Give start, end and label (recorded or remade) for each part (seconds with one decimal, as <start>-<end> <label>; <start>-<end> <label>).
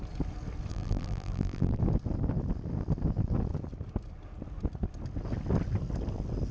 0.0-0.7 recorded; 0.7-1.8 remade; 1.8-6.5 recorded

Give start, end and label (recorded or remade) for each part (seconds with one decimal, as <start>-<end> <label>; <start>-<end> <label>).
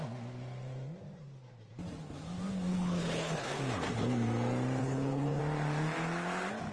0.0-2.7 recorded; 2.7-3.6 remade; 3.6-4.8 recorded; 4.8-5.4 remade; 5.4-6.7 recorded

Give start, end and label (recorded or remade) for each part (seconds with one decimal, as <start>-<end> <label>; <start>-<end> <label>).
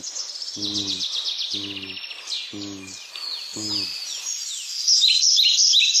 0.0-6.0 recorded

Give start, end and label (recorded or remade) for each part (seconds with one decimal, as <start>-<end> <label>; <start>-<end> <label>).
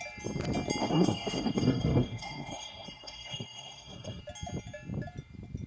0.0-0.8 recorded; 0.8-4.2 remade; 4.2-5.7 recorded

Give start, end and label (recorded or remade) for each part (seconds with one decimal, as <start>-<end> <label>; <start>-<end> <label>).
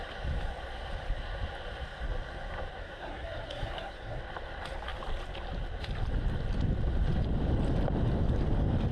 0.0-2.8 recorded; 2.8-4.2 remade; 4.2-8.9 recorded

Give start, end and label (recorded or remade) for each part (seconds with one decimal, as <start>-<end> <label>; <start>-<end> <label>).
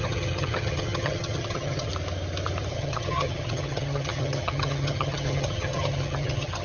0.0-1.9 remade; 1.9-2.7 recorded; 2.7-6.6 remade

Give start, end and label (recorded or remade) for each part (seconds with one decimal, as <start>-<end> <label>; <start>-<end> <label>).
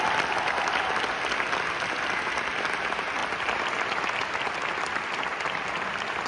0.0-6.3 recorded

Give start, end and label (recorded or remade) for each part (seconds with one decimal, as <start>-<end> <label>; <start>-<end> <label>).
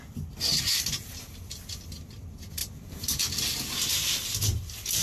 0.0-2.6 recorded; 2.6-3.2 remade; 3.2-5.0 recorded